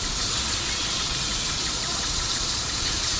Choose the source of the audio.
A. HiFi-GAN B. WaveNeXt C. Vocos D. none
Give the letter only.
C